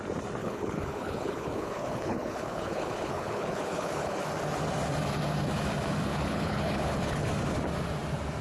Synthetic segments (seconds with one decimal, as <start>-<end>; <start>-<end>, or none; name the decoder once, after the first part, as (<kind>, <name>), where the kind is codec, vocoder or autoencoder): 0.4-4.2 (codec, HILCodec); 6.1-7.3